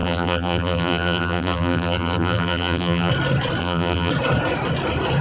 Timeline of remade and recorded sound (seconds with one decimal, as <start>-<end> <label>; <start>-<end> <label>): 0.0-3.1 remade; 3.1-3.6 recorded; 3.6-4.1 remade; 4.1-5.2 recorded